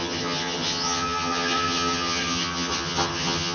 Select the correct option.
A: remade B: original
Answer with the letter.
A